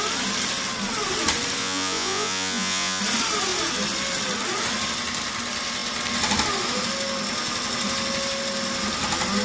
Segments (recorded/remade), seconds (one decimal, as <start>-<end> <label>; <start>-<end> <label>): 0.0-1.6 recorded; 1.6-3.0 remade; 3.0-9.4 recorded